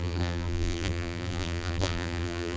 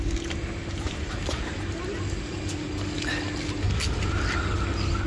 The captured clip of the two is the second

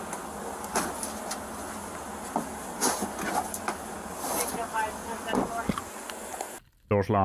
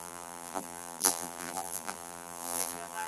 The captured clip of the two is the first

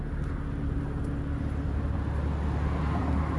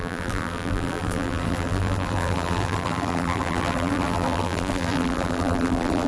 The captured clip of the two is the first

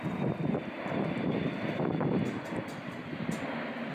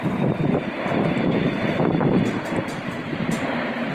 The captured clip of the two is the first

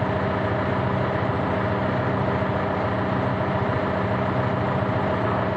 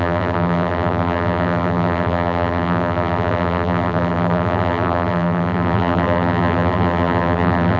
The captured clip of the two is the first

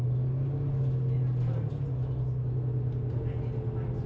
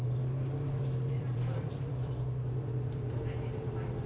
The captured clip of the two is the first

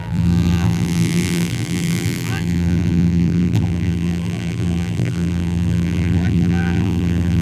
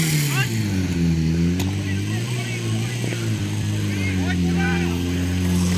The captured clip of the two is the second